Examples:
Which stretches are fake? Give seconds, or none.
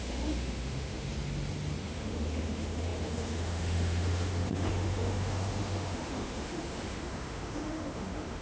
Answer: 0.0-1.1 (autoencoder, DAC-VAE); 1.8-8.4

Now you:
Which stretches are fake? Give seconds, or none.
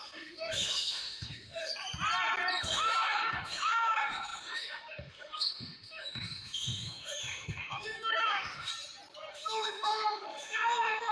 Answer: 0.0-1.7 (autoencoder, DAC-VAE); 2.6-8.7; 9.3-11.1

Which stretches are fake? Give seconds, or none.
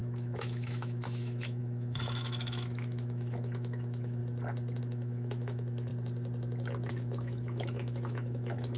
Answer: 0.0-4.2 (autoencoder, DAC-VAE); 4.8-5.9; 6.9-8.8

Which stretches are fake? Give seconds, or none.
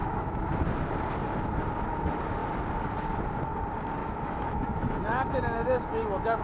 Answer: 0.0-0.5 (autoencoder, DAC-VAE); 4.0-6.4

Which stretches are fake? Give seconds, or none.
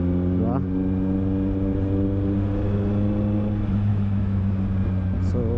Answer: 3.9-4.4 (autoencoder, DAC-VAE)